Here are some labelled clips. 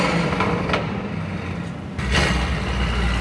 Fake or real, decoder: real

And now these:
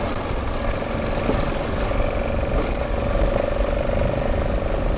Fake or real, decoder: real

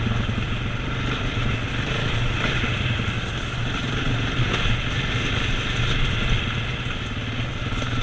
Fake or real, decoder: real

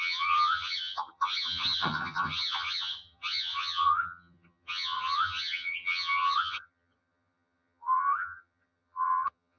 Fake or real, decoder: fake, vocoder, HiFi-GAN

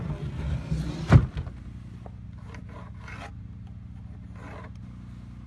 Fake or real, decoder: real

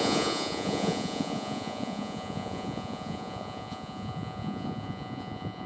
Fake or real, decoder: fake, vocoder, Vocos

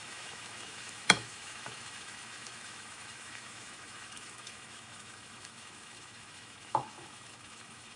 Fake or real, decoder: fake, autoencoder, DAC-VAE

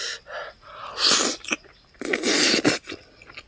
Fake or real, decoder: real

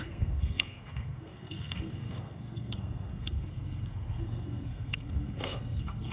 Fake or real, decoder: fake, codec, SNAC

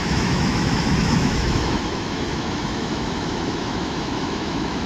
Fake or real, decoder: fake, autoencoder, DAC-VAE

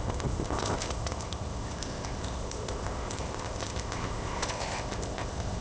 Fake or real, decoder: fake, codec, ZipCodec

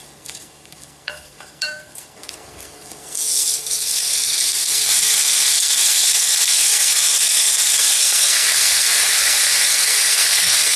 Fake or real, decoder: fake, codec, SNAC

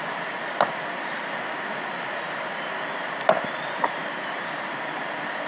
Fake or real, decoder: real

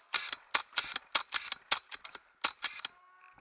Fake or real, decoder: real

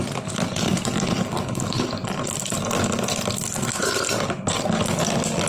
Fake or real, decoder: fake, vocoder, BigVGAN v2